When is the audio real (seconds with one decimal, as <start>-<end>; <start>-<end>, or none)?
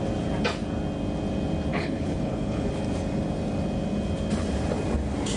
0.0-1.7; 2.7-5.4